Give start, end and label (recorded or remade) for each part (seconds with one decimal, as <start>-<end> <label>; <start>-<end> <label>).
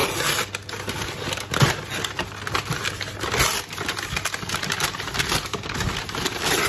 0.0-6.7 recorded